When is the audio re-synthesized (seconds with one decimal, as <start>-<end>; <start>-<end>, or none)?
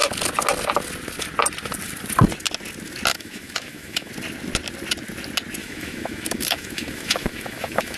3.1-4.1; 5.6-8.0